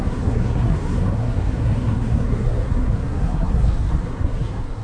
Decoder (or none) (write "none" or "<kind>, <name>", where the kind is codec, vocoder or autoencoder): codec, SNAC